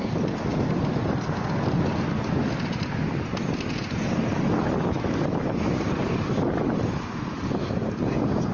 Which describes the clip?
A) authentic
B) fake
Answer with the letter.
A